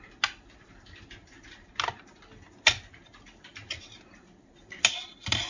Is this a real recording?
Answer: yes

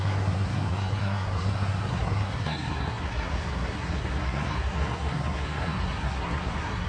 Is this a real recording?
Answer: no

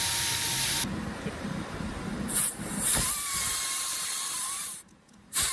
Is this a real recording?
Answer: yes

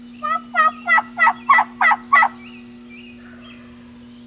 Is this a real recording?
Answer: yes